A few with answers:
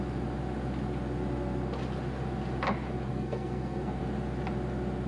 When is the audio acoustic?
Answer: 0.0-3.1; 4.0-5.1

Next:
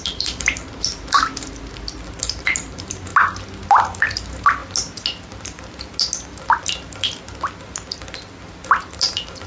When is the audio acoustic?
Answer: 0.9-2.2; 3.1-4.0; 4.6-9.5

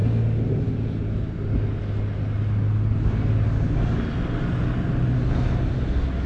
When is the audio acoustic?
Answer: 0.0-6.3

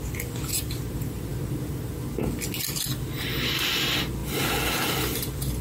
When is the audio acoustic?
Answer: 0.0-5.6

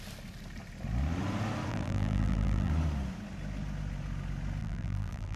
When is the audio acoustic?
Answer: 0.0-1.7; 2.7-4.6